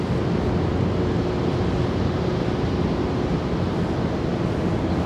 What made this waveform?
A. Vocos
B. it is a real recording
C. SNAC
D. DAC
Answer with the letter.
B